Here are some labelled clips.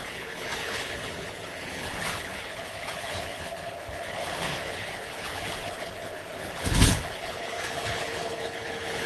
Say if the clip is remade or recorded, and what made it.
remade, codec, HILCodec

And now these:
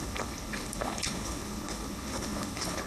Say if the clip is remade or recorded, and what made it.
remade, codec, HILCodec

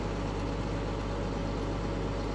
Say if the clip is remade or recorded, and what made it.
recorded